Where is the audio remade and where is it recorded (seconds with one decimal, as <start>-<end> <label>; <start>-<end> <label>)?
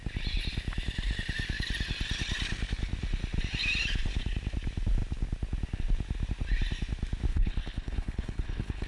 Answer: 0.0-7.3 recorded; 7.3-8.9 remade